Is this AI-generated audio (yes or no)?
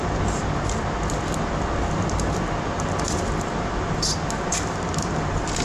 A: no